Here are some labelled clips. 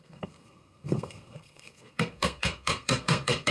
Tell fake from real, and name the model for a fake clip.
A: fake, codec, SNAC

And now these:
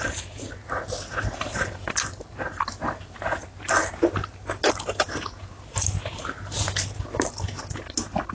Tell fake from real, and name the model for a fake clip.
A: real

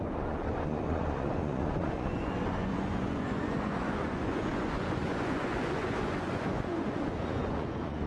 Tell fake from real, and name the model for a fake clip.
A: fake, vocoder, Vocos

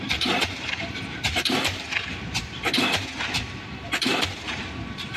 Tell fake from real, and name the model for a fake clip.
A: fake, vocoder, BigVGAN v2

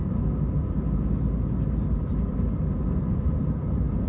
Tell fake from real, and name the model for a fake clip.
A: real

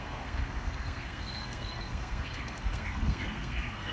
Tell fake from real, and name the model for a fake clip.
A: fake, codec, SNAC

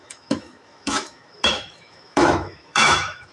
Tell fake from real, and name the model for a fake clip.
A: fake, autoencoder, DAC-VAE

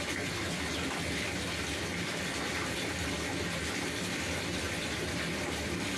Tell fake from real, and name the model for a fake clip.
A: real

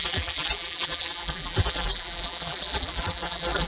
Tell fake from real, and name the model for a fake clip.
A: fake, vocoder, BigVGAN v2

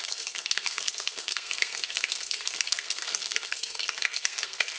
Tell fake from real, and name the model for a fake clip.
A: fake, codec, SNAC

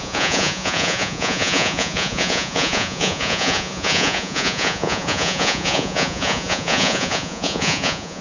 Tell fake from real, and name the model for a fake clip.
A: fake, vocoder, Vocos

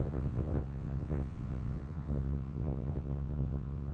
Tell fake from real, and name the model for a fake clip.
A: fake, vocoder, WaveNeXt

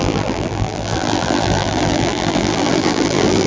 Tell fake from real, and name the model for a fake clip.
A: fake, vocoder, BigVGAN v2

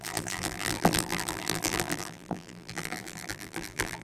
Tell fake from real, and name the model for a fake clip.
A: fake, vocoder, BigVGAN v2